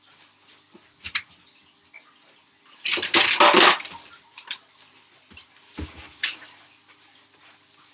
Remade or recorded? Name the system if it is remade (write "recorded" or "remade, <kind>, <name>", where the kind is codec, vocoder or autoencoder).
recorded